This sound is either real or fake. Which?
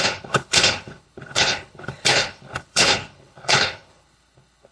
fake